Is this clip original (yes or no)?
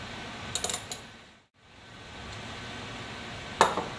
yes